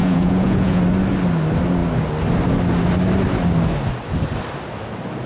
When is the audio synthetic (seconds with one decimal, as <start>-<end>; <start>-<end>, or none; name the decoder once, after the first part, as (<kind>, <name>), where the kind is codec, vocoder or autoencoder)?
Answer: 0.0-0.8 (vocoder, Vocos)